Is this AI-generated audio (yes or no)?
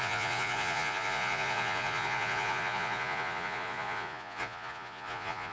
yes